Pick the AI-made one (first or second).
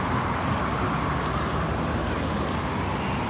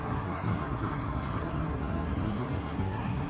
second